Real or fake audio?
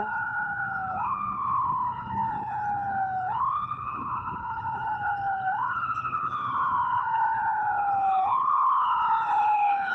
fake